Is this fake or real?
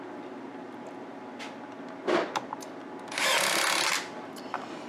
real